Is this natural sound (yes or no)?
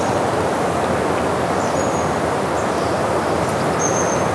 yes